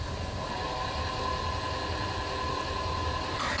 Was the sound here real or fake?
real